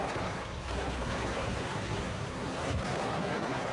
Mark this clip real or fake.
fake